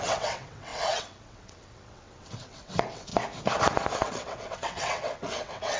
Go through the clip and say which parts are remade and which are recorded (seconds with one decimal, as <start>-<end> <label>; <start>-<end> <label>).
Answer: 0.0-3.1 remade; 3.1-4.0 recorded; 4.0-5.8 remade